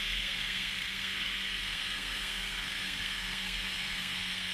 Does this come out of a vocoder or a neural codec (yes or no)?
yes